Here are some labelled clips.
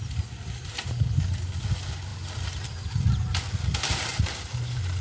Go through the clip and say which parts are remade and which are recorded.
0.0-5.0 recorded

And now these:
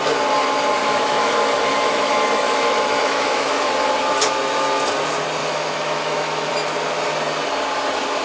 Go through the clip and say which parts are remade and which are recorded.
0.0-0.8 recorded; 0.8-3.7 remade; 3.7-5.4 recorded; 5.4-6.5 remade; 6.5-8.2 recorded

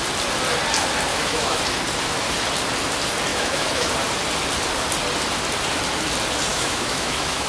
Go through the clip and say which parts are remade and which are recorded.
0.0-1.1 recorded; 1.1-1.6 remade; 1.6-3.3 recorded; 3.3-3.9 remade; 3.9-6.5 recorded; 6.5-7.5 remade